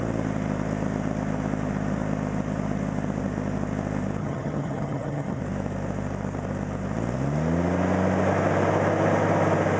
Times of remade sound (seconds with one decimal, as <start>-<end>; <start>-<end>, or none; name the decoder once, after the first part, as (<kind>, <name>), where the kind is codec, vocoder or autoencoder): 4.2-5.4 (vocoder, HiFi-GAN)